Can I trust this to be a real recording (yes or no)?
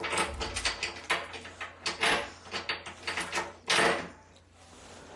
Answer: yes